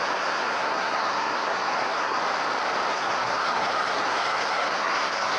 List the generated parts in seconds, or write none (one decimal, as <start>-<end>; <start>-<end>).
0.0-2.2; 2.9-5.4